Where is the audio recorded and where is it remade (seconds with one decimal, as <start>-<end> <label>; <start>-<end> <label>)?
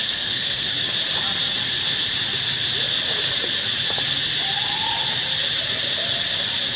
0.0-0.7 remade; 0.7-6.8 recorded